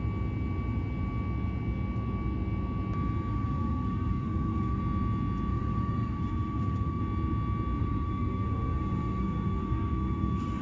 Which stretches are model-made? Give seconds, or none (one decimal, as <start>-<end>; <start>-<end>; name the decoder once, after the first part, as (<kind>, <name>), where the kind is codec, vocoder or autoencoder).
3.3-4.8 (codec, SNAC); 5.5-7.0; 7.8-10.6